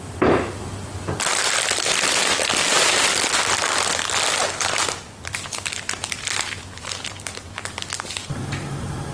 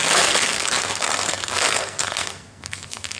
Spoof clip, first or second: second